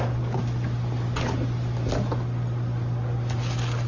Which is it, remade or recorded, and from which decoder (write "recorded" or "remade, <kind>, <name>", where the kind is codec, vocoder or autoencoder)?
recorded